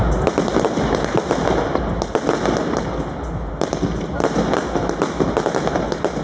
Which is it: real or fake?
real